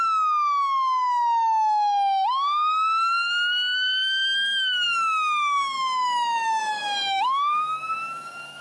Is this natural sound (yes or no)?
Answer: no